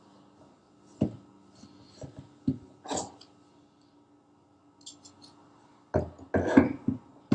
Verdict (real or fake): real